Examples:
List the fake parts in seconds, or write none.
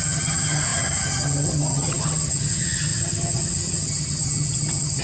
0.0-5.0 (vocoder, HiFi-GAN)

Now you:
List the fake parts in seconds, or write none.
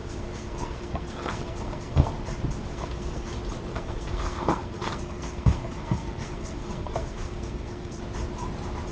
0.0-2.1 (codec, SNAC); 2.7-3.3; 3.7-8.0